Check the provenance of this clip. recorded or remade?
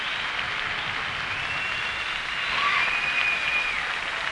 recorded